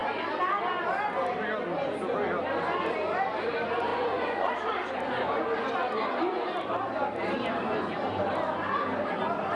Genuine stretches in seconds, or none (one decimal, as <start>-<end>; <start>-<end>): 0.0-3.9; 4.5-9.6